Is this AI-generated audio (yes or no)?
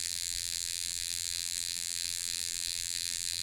yes